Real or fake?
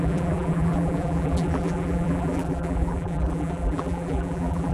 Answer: fake